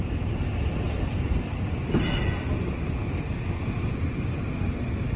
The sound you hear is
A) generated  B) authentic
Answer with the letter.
B